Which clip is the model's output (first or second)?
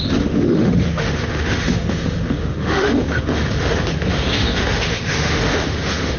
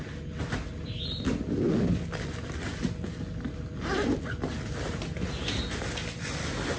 first